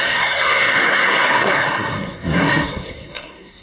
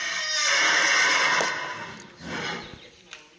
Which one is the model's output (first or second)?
first